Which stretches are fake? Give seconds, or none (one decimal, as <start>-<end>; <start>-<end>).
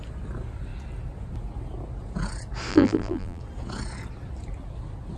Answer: 2.7-3.4